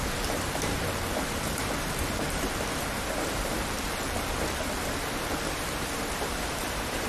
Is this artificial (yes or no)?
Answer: yes